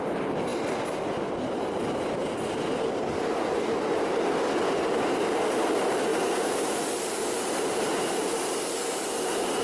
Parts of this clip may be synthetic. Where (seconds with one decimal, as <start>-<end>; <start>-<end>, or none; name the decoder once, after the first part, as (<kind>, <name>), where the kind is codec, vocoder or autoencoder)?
none